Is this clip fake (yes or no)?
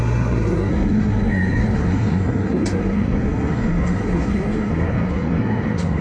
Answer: yes